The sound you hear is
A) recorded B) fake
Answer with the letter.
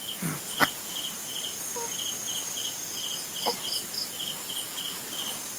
A